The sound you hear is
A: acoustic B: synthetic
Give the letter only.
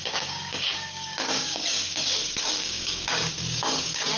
B